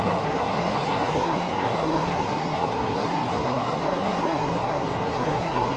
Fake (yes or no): yes